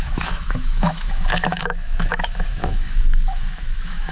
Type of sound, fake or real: fake